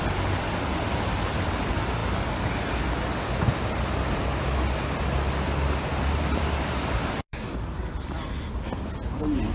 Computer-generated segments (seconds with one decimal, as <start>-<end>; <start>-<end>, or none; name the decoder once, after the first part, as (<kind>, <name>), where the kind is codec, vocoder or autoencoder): 5.9-7.8 (vocoder, BigVGAN v2)